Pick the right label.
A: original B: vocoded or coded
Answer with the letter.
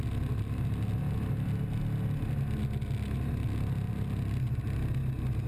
A